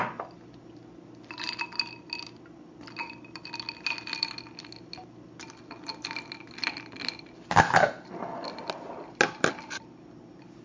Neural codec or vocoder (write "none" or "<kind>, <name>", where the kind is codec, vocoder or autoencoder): none